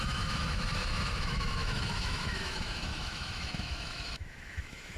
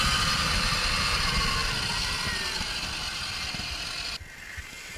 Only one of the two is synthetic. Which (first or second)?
first